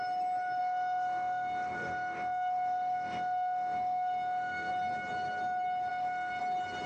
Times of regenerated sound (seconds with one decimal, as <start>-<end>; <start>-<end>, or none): 0.6-4.7; 5.9-6.4